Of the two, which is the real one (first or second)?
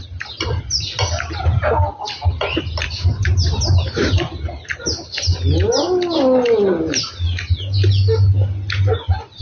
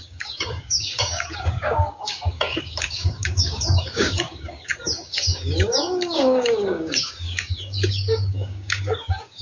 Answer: first